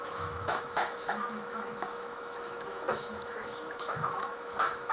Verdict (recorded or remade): remade